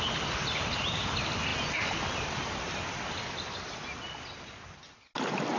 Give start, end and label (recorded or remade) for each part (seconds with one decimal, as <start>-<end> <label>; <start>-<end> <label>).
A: 0.0-5.6 recorded